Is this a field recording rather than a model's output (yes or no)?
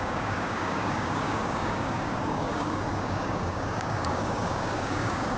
no